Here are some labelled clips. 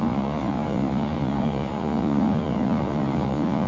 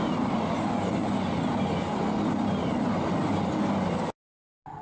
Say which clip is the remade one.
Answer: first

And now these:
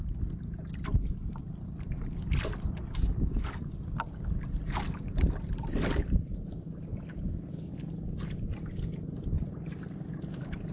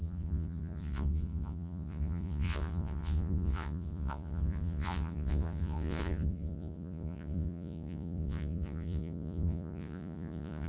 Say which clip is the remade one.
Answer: second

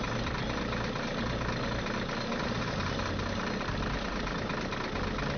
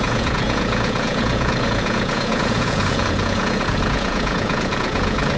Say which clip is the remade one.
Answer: second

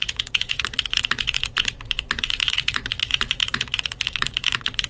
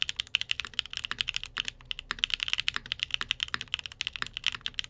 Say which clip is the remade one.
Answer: first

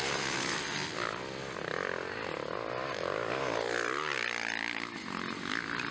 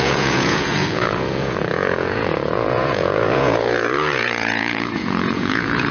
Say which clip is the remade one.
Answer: second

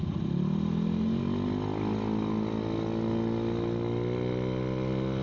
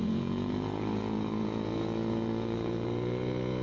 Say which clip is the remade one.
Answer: second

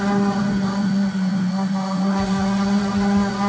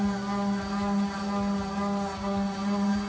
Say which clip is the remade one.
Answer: first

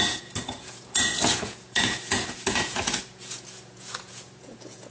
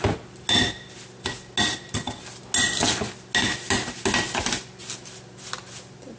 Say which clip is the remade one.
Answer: first